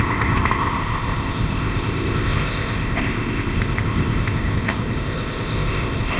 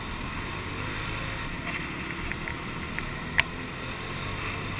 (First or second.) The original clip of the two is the second